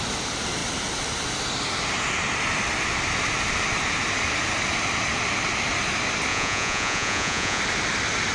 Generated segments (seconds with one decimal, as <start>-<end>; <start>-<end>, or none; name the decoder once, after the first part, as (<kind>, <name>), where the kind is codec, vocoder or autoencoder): 6.3-7.6 (vocoder, Vocos)